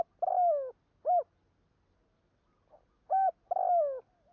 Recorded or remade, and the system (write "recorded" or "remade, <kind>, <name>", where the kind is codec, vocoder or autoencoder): recorded